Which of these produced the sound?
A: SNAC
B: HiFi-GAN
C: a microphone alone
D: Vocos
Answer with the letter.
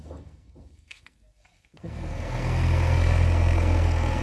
A